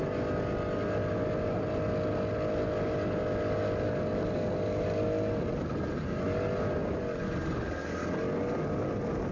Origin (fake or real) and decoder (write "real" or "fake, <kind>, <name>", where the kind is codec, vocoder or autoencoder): real